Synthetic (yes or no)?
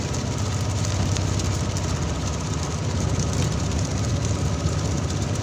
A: no